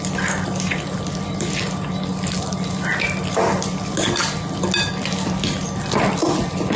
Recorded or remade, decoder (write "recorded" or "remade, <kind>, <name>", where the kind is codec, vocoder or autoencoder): recorded